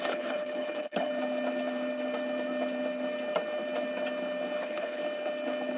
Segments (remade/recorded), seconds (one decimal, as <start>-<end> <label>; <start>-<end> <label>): 0.0-1.1 remade; 1.1-4.6 recorded; 4.6-5.0 remade; 5.0-5.8 recorded